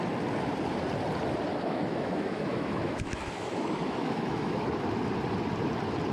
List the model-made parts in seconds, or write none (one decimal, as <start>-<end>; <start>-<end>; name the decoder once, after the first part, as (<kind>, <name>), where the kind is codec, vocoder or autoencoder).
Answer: 1.5-4.7 (autoencoder, DAC-VAE)